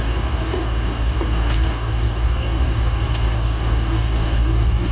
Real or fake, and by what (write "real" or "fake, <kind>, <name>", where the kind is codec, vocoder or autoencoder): fake, codec, DAC